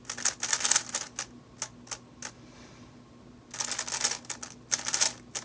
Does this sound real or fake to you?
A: real